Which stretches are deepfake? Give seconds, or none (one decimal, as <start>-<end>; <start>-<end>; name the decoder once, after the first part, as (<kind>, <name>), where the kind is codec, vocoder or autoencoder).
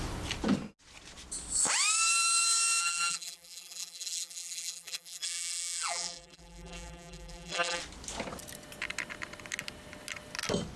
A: 2.8-7.8 (vocoder, BigVGAN v2)